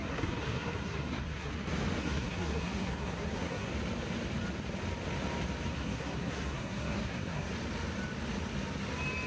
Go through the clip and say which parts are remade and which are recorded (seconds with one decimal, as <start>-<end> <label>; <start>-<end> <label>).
0.0-1.5 remade; 1.5-2.0 recorded; 2.0-3.7 remade; 3.7-5.7 recorded; 5.7-7.5 remade; 7.5-9.3 recorded